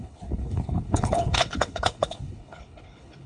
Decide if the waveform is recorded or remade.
remade